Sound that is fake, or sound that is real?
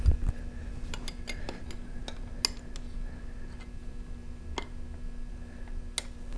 real